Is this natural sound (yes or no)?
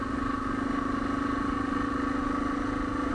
yes